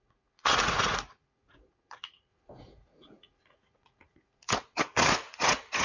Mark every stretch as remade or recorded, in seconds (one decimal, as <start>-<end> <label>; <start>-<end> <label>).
0.0-5.8 remade